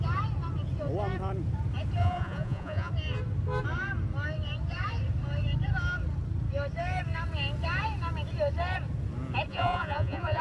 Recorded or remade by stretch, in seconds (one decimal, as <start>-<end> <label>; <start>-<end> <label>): 0.0-2.0 recorded; 2.0-2.9 remade; 2.9-9.5 recorded; 9.5-10.4 remade